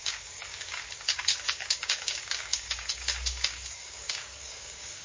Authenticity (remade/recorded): remade